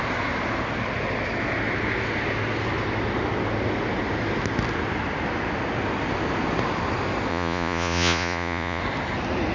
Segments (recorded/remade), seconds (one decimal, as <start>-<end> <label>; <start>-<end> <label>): 0.0-7.3 recorded; 7.3-8.8 remade; 8.8-9.5 recorded